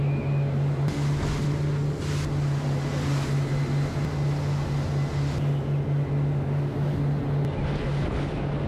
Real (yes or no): yes